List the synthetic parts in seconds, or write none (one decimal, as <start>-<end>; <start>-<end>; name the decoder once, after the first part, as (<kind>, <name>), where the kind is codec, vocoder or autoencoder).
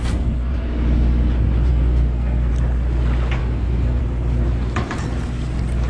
0.0-0.5 (codec, SNAC); 1.7-2.5; 3.4-4.0